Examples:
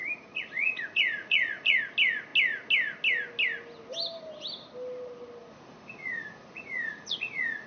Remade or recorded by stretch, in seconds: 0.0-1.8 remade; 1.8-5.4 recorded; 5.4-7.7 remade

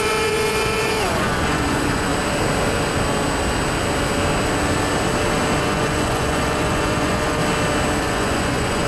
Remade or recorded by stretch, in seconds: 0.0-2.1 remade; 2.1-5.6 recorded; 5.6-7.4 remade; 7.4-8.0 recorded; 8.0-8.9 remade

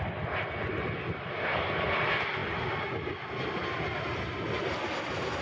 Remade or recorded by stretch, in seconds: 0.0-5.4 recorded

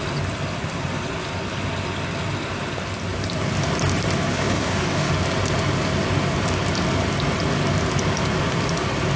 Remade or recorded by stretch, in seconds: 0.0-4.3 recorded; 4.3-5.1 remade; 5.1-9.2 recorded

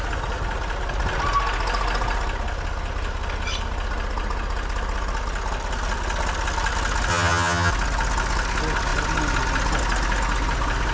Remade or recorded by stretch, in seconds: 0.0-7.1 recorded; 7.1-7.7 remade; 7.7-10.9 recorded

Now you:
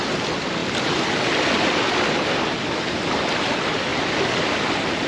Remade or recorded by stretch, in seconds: 0.0-3.9 recorded; 3.9-4.5 remade; 4.5-5.1 recorded